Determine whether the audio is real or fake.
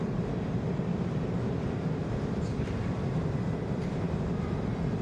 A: fake